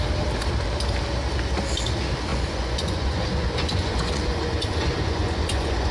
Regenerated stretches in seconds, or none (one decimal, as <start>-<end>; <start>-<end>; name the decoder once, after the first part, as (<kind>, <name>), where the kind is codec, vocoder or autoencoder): 2.3-5.9 (vocoder, Vocos)